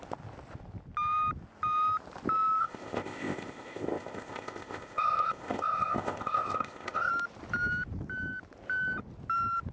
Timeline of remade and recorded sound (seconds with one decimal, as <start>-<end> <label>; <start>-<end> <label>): 0.0-2.6 recorded; 2.6-7.1 remade; 7.1-9.7 recorded